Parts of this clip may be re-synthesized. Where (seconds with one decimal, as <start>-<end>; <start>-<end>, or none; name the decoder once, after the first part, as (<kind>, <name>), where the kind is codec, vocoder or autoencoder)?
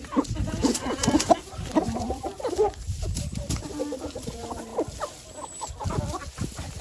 0.0-4.7 (vocoder, BigVGAN v2); 6.3-6.8